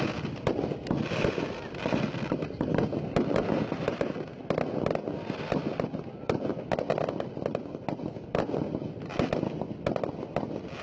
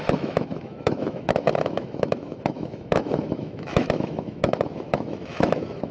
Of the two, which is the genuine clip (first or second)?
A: first